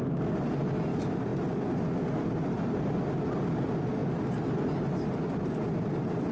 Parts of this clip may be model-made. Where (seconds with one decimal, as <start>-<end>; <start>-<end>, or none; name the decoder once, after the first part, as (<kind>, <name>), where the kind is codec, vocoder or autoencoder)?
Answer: none